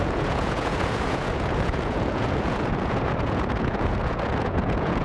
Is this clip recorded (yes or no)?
no